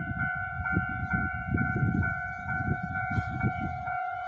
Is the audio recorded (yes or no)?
no